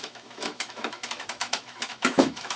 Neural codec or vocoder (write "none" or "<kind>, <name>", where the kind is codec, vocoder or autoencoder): autoencoder, DAC-VAE